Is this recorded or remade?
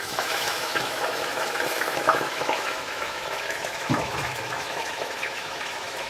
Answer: remade